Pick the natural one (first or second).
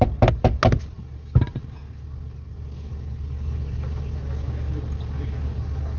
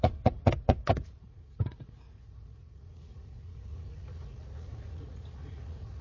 first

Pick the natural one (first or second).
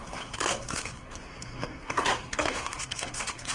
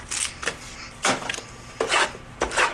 second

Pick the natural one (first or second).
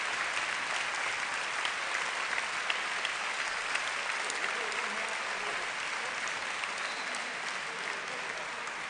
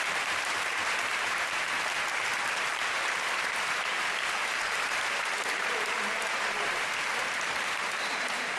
first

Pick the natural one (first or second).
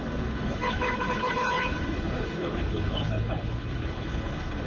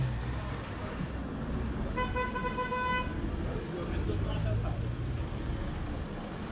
second